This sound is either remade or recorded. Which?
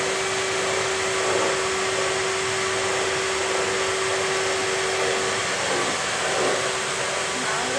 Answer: recorded